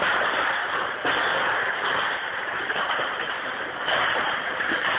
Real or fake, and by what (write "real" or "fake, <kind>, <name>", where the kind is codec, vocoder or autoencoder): fake, vocoder, BigVGAN v2